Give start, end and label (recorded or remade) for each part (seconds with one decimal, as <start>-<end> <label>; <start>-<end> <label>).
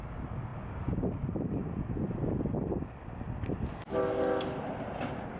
0.0-5.4 recorded